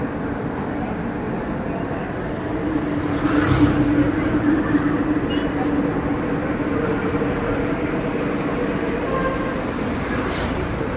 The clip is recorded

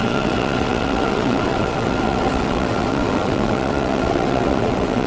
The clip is remade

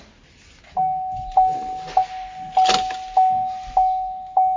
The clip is recorded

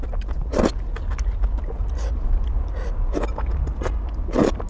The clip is recorded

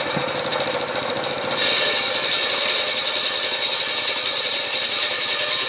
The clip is recorded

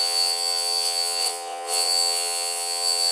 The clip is remade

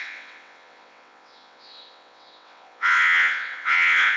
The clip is remade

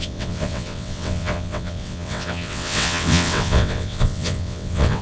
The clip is remade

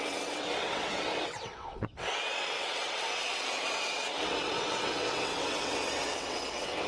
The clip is remade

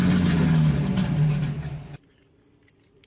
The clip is recorded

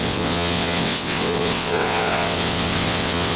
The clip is remade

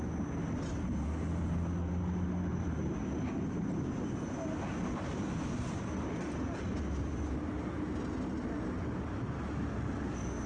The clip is recorded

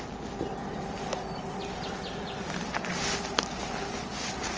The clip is recorded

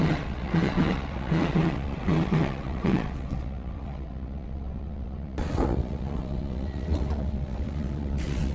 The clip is remade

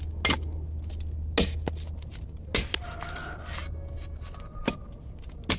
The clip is recorded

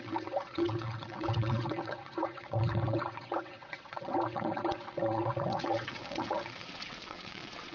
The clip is remade